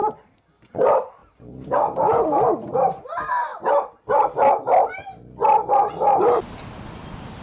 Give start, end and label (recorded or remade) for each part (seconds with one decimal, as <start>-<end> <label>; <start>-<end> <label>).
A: 0.0-1.2 recorded; 1.2-3.0 remade; 3.0-7.4 recorded